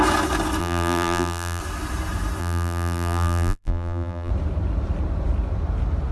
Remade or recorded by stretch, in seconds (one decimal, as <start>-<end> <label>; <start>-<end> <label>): 0.0-0.6 recorded; 0.6-1.6 remade; 1.6-2.4 recorded; 2.4-4.3 remade; 4.3-6.1 recorded